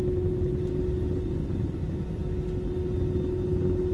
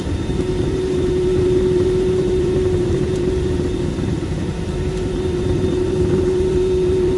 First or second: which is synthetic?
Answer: second